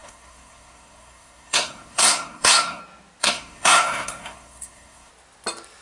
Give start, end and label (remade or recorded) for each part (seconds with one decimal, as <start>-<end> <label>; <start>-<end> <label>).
0.0-2.8 remade; 2.8-3.2 recorded; 3.2-5.1 remade; 5.1-5.8 recorded